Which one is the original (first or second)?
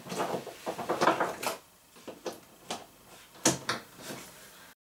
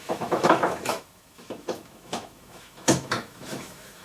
first